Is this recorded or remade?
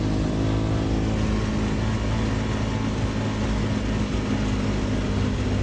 recorded